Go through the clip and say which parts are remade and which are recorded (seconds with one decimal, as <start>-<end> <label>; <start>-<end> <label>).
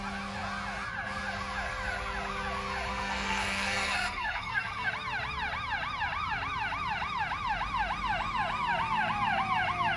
0.0-2.9 recorded; 2.9-4.9 remade; 4.9-10.0 recorded